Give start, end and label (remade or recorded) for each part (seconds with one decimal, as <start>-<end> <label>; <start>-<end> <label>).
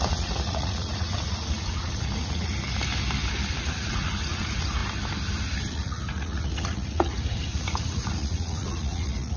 0.0-2.5 remade; 2.5-3.5 recorded; 3.5-4.8 remade; 4.8-5.7 recorded; 5.7-9.4 remade